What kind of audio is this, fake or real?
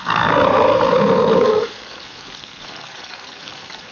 real